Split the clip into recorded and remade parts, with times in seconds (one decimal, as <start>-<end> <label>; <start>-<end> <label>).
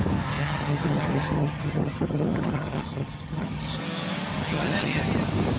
0.0-0.4 recorded; 0.4-3.8 remade; 3.8-4.3 recorded; 4.3-5.0 remade; 5.0-5.6 recorded